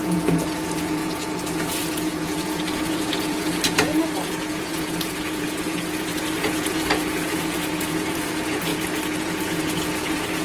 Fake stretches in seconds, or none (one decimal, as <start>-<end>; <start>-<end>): 0.0-10.4